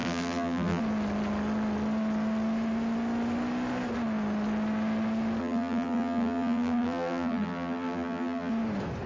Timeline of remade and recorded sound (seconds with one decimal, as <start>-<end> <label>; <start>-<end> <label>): 0.0-0.8 remade; 0.8-5.4 recorded; 5.4-8.5 remade; 8.5-9.1 recorded